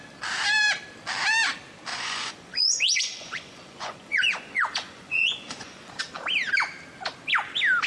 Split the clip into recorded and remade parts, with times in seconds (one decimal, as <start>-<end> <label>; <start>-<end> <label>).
0.0-1.9 recorded; 1.9-6.0 remade; 6.0-7.9 recorded